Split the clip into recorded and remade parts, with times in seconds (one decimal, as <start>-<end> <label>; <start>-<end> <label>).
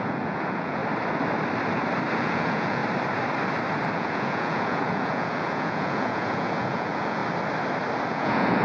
0.0-0.8 remade; 0.8-2.2 recorded; 2.2-2.8 remade; 2.8-3.9 recorded; 3.9-7.2 remade; 7.2-8.1 recorded; 8.1-8.6 remade